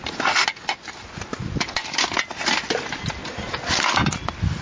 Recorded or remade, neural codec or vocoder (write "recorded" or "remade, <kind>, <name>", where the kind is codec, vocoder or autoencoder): recorded